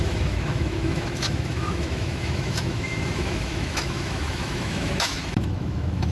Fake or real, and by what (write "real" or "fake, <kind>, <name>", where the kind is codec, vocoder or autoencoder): fake, autoencoder, DAC-VAE